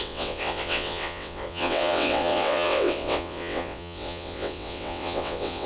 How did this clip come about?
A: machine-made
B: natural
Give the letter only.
A